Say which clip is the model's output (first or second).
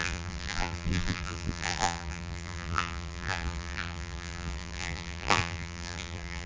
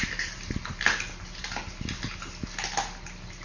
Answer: first